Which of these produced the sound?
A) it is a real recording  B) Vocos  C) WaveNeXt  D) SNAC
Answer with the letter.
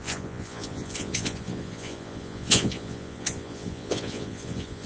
B